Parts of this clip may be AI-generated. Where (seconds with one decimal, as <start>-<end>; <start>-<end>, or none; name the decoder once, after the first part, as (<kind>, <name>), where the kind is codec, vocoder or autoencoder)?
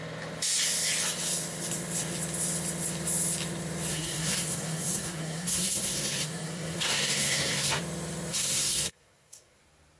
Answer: 3.9-7.8 (codec, SNAC); 8.3-9.6